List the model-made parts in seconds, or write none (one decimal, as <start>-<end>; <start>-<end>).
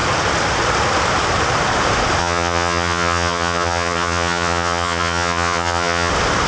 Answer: 2.2-6.1